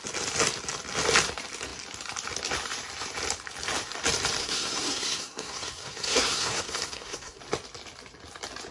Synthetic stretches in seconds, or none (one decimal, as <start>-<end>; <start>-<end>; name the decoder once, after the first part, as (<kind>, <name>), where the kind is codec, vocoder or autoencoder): 4.4-7.4 (codec, SNAC)